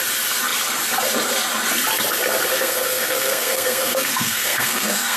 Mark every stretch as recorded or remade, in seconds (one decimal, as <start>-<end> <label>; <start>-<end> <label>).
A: 0.0-2.5 recorded; 2.5-5.2 remade